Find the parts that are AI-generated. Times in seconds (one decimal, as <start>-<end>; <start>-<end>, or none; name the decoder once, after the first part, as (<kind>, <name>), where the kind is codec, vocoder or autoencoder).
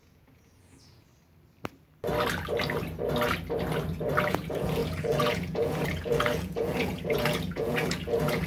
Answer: 0.0-1.1 (vocoder, Vocos); 4.3-8.5